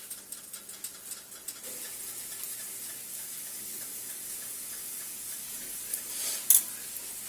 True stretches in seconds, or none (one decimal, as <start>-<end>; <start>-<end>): 0.0-3.1; 6.1-7.3